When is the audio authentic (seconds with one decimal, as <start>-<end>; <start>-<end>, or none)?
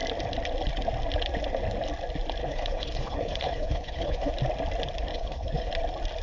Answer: 0.0-2.4; 4.3-5.1; 5.7-6.2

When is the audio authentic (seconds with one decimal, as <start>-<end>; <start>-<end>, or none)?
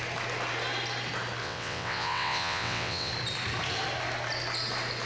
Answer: 0.0-1.4; 3.1-5.1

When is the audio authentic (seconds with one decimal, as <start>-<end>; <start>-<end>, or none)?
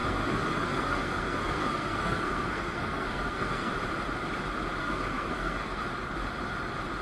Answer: 3.7-4.8; 5.8-7.0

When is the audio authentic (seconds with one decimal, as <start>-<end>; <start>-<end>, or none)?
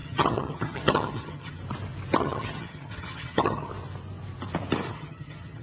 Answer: 1.6-2.2; 3.7-4.9